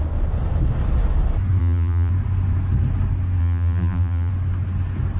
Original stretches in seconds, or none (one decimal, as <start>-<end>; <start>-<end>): 0.0-1.6; 2.1-3.4; 4.3-5.2

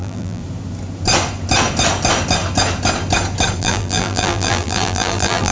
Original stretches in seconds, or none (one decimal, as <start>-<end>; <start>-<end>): 0.4-3.6

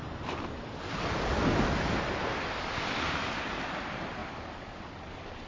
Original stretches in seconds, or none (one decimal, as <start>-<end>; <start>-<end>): 0.0-2.3; 4.2-4.9

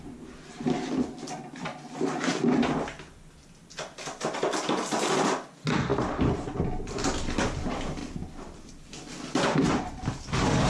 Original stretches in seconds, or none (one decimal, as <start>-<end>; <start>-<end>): 0.0-10.7

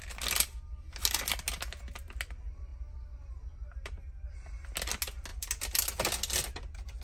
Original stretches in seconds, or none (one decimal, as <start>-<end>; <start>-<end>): 0.0-7.0

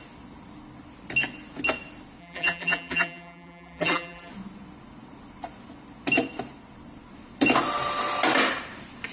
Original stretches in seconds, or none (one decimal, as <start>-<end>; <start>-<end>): 0.0-2.2; 4.3-9.1